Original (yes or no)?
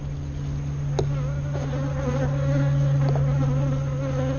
yes